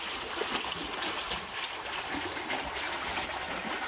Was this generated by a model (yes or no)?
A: no